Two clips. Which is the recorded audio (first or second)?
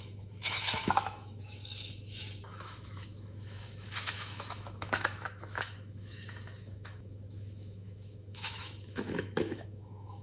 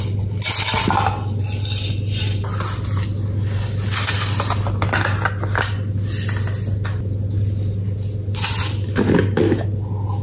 second